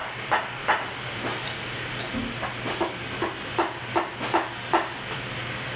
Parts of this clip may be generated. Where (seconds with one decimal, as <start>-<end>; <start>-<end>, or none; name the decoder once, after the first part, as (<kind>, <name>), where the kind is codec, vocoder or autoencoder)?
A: none